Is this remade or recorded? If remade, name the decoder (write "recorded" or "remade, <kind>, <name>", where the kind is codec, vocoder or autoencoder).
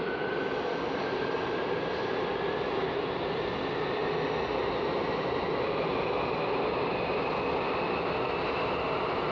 recorded